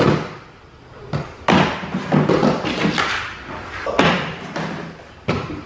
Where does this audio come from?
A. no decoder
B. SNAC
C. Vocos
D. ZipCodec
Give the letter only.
A